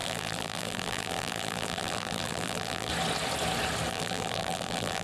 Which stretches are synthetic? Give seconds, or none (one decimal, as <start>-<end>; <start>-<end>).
0.0-2.9; 3.9-5.0